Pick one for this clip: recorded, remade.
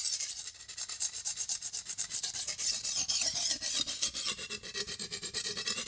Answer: remade